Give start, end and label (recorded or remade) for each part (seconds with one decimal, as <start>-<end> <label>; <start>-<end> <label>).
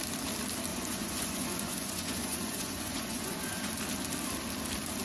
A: 0.0-0.7 recorded; 0.7-3.7 remade; 3.7-5.0 recorded